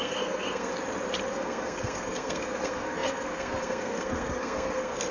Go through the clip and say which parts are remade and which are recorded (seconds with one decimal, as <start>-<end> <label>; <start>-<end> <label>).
0.0-0.7 remade; 0.7-1.3 recorded; 1.3-5.1 remade